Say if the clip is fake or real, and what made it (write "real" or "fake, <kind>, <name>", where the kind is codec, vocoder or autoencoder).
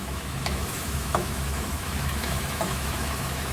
fake, autoencoder, DAC-VAE